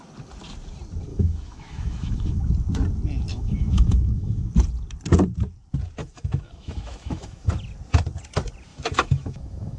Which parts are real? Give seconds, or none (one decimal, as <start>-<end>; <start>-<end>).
0.0-1.1; 2.5-3.3; 4.5-6.0; 7.5-8.7